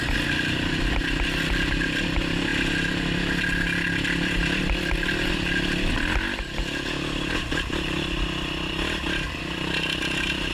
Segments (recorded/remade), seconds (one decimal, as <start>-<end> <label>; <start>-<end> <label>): 0.0-10.5 recorded